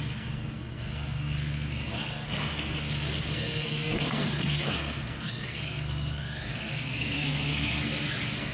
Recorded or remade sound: remade